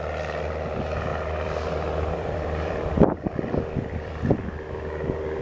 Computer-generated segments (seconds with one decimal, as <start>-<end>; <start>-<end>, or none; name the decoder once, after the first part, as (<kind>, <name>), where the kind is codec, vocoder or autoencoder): 1.1-4.3 (vocoder, BigVGAN v2)